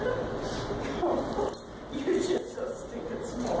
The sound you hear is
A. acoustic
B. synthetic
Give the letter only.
A